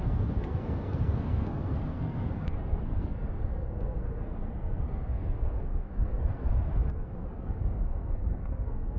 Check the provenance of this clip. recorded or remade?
remade